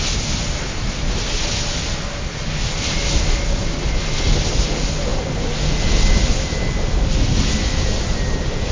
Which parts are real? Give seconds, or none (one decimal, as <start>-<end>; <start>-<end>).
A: 0.0-8.7